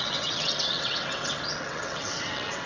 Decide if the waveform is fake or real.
fake